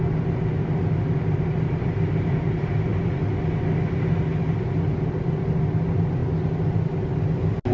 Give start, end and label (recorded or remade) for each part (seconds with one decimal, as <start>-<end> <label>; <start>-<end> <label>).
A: 0.0-7.7 recorded